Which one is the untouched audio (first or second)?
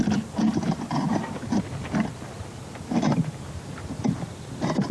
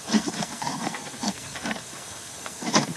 first